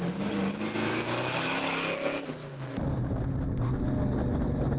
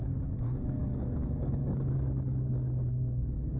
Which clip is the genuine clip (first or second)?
first